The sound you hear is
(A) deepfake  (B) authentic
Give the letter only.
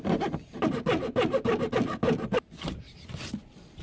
B